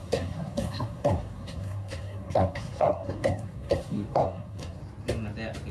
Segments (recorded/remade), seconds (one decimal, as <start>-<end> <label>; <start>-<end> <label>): 0.0-4.8 remade; 4.8-5.7 recorded